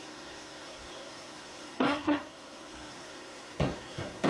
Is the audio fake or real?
fake